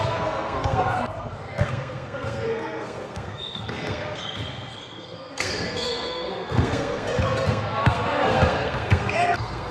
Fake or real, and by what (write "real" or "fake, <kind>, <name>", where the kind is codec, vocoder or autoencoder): fake, codec, SNAC